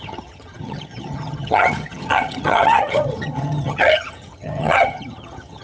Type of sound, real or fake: fake